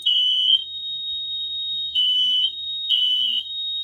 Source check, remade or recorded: remade